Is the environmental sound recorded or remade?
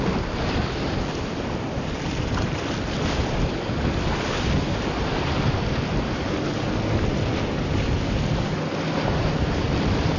recorded